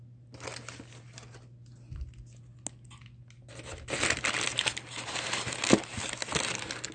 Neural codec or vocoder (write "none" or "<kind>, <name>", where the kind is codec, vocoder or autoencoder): none